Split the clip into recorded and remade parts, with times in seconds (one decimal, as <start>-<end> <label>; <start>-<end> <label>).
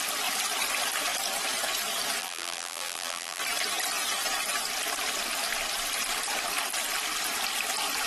0.0-2.2 recorded; 2.2-3.4 remade; 3.4-8.1 recorded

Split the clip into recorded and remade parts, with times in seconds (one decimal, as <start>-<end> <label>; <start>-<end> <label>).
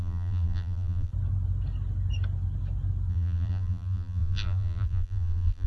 0.0-1.1 remade; 1.1-3.1 recorded; 3.1-5.7 remade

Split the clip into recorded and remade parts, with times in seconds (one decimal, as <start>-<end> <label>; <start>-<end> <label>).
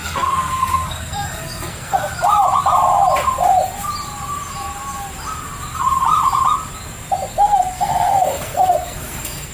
0.0-2.1 remade; 2.1-7.3 recorded; 7.3-9.5 remade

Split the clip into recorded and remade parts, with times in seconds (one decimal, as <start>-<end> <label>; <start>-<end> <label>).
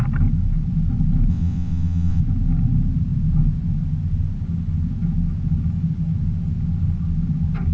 0.0-1.3 recorded; 1.3-2.2 remade; 2.2-7.7 recorded